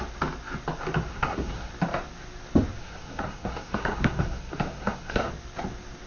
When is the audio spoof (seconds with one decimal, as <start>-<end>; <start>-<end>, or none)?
1.1-1.7; 2.8-5.3